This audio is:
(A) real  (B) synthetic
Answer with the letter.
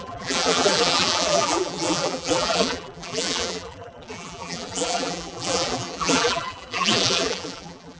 B